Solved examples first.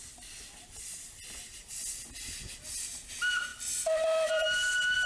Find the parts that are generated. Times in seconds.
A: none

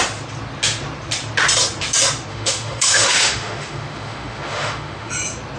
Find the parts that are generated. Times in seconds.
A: 2.3-5.1 (autoencoder, DAC-VAE)

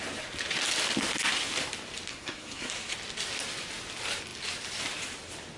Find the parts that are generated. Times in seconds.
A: 2.1-2.7 (codec, SNAC)

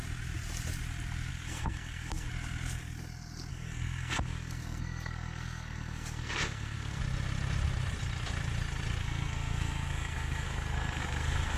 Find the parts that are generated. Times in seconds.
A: 1.3-2.3 (codec, SNAC); 3.5-7.0; 9.0-11.6

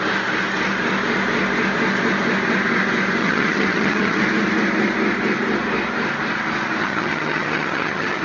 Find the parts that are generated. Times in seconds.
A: 3.2-4.2 (vocoder, HiFi-GAN); 6.8-8.2

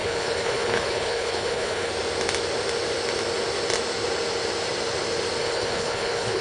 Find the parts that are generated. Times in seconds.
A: 0.0-1.9 (codec, HILCodec); 5.4-6.4